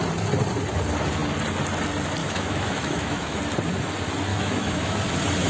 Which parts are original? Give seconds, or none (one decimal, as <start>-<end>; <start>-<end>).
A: 0.0-2.2; 3.4-4.3; 5.0-5.5